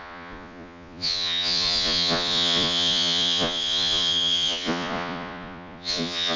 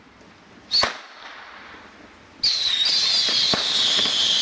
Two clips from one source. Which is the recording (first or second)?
second